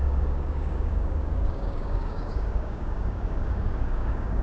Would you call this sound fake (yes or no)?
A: yes